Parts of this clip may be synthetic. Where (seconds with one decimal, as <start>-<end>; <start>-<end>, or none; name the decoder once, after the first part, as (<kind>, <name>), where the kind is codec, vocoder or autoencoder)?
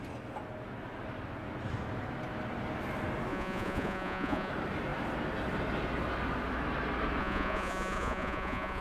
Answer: 3.3-4.5 (vocoder, Vocos); 7.2-8.8